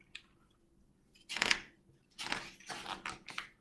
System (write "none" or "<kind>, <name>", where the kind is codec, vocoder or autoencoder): none